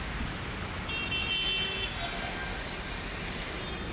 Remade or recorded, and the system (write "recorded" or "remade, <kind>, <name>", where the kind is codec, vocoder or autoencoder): recorded